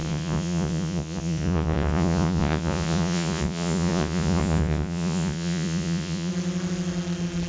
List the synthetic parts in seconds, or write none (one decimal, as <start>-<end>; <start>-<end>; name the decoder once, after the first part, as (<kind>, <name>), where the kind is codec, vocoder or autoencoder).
0.0-6.3 (vocoder, Vocos)

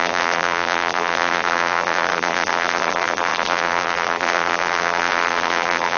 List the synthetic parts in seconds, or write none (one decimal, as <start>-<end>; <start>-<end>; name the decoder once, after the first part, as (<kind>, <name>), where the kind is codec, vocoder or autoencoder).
0.0-6.0 (vocoder, BigVGAN v2)

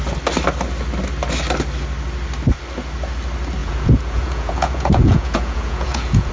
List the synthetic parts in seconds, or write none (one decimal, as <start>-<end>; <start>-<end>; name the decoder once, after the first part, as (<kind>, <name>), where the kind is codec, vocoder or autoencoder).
3.6-6.3 (vocoder, Vocos)

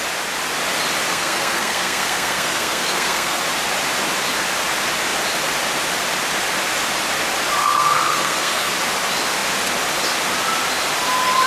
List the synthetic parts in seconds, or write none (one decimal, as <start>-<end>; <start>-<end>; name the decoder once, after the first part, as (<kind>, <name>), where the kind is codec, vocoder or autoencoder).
1.1-3.4 (codec, SNAC); 7.6-8.7

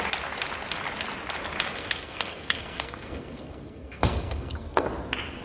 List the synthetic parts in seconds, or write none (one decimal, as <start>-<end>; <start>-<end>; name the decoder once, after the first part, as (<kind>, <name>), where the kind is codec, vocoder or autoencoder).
1.7-4.9 (codec, SNAC)

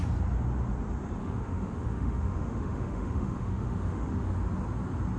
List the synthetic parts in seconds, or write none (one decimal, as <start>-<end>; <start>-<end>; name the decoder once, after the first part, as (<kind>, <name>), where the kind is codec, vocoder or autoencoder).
1.2-4.3 (autoencoder, DAC-VAE)

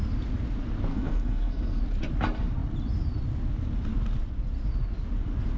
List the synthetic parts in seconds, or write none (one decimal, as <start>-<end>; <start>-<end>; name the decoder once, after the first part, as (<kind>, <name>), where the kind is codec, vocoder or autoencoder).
0.9-1.8 (codec, SNAC)